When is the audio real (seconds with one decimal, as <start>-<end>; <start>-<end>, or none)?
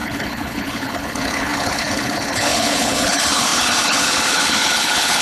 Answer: none